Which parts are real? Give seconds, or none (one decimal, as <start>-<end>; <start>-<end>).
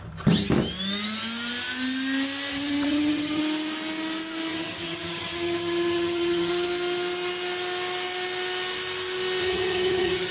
0.0-2.5; 3.4-4.5; 6.5-9.4